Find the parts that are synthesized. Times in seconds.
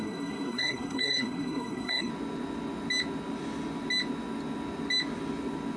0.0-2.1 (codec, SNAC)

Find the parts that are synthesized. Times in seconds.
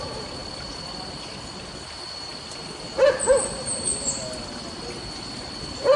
none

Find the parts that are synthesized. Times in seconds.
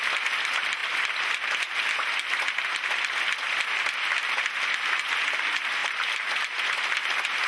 5.8-6.9 (vocoder, BigVGAN v2)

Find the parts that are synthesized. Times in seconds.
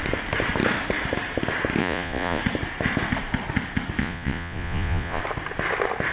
1.8-2.4 (vocoder, Vocos); 4.0-5.2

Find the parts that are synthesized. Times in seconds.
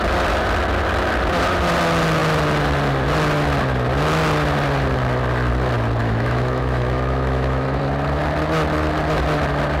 6.0-7.8 (autoencoder, DAC-VAE)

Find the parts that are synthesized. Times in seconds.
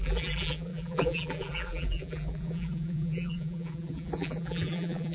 0.0-5.1 (vocoder, BigVGAN v2)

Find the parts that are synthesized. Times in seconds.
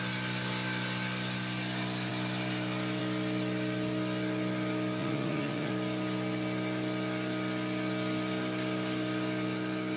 5.0-5.7 (vocoder, Vocos)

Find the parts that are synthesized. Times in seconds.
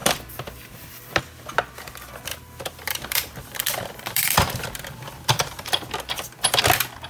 0.0-1.2 (vocoder, BigVGAN v2); 2.3-6.6